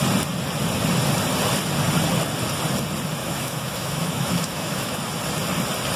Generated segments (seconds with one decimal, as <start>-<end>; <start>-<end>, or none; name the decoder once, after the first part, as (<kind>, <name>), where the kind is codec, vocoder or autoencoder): 3.2-5.0 (autoencoder, DAC-VAE)